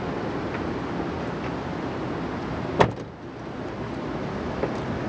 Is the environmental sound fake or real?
real